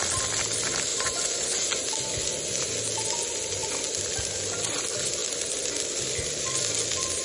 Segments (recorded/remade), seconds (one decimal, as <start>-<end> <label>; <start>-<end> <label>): 0.0-0.9 recorded; 0.9-1.8 remade; 1.8-7.2 recorded